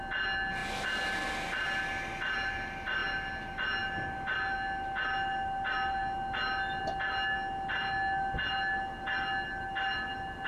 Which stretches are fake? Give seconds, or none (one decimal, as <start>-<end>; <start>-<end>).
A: none